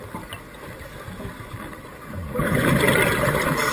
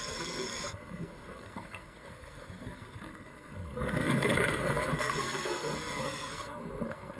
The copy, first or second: second